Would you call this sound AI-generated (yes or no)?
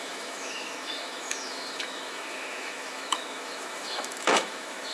yes